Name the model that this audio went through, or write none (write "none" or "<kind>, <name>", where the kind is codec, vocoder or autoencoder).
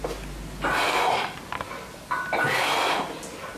none